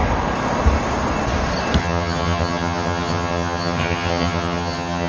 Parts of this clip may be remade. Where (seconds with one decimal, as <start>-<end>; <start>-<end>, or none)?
1.8-5.1